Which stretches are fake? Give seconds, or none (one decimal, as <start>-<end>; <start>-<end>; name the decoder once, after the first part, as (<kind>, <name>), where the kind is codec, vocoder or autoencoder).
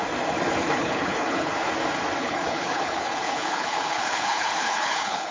0.6-1.7 (codec, HILCodec); 2.2-5.3